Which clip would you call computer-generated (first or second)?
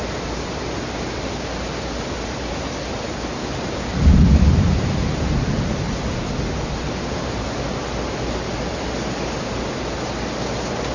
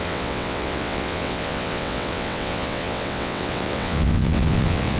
second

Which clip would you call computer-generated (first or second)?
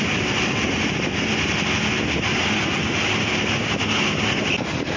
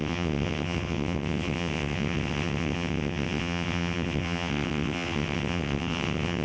second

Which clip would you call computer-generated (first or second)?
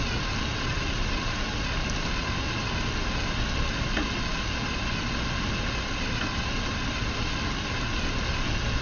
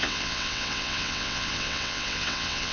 second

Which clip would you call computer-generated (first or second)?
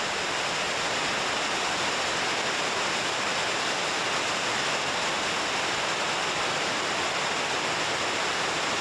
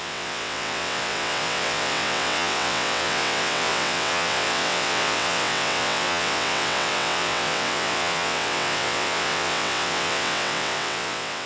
second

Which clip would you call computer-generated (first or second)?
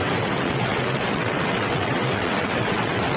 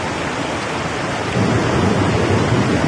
first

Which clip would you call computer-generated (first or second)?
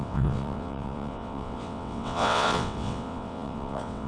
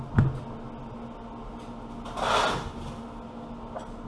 first